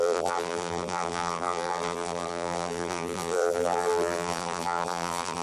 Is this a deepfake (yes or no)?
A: yes